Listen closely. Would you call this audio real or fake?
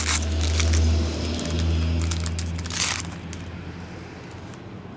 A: real